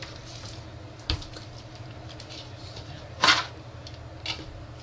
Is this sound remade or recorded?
recorded